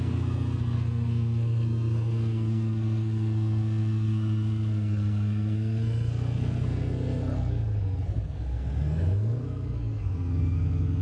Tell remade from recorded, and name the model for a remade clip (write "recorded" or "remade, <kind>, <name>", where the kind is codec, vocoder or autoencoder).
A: remade, codec, SNAC